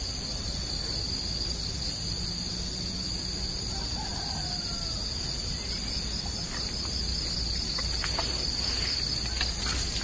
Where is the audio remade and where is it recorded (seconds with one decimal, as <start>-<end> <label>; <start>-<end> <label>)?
0.0-10.0 recorded